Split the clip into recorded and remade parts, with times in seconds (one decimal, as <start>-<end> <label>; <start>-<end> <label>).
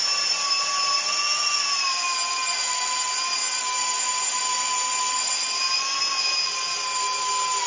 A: 0.0-7.7 recorded